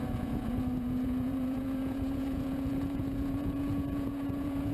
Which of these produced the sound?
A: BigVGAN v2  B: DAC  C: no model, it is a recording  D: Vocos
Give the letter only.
D